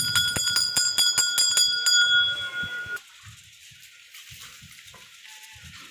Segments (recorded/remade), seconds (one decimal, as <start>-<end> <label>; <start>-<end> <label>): 0.0-5.9 recorded